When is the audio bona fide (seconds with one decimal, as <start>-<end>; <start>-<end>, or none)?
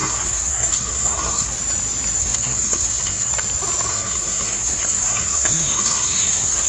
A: 1.6-2.2; 3.3-3.9